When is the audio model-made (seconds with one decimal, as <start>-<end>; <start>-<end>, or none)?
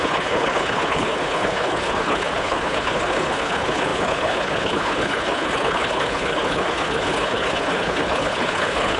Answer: 0.0-9.0